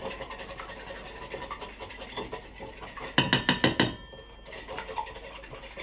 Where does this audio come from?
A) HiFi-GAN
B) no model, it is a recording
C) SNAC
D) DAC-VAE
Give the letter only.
B